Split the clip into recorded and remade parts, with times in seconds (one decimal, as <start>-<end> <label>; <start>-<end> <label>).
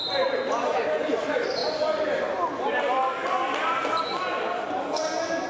0.0-5.5 recorded